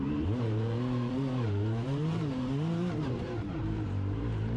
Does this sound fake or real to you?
fake